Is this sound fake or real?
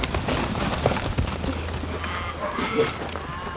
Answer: real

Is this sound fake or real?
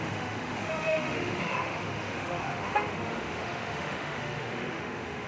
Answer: fake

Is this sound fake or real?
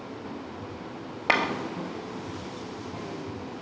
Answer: real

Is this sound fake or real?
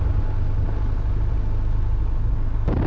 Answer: real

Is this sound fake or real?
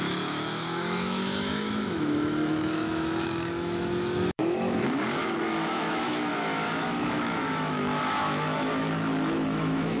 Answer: fake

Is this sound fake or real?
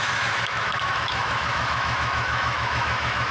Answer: fake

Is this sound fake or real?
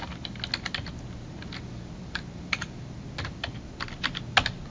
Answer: real